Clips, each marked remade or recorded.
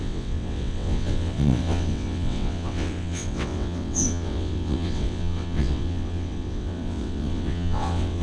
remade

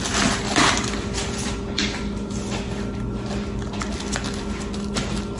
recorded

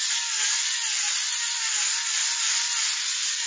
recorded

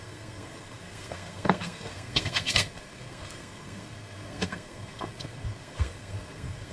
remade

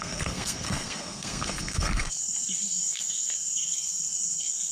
remade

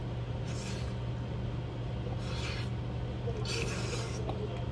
recorded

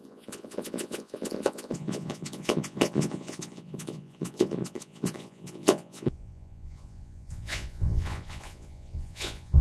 remade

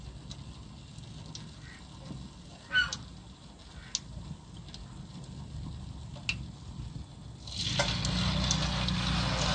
recorded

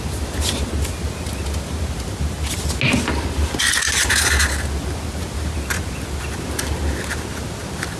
recorded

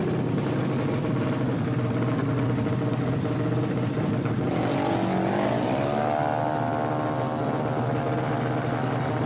recorded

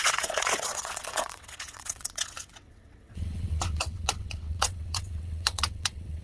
remade